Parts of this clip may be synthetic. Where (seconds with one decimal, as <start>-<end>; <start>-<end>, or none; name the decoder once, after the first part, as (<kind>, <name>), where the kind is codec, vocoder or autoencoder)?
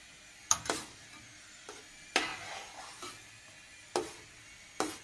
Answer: none